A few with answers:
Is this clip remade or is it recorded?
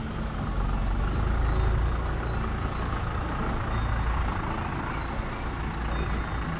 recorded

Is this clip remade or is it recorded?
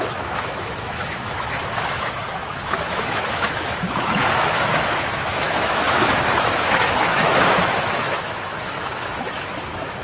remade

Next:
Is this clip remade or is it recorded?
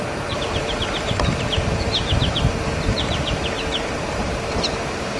remade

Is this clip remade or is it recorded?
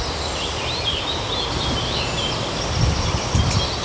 recorded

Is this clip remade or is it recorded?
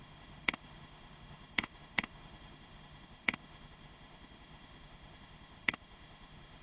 remade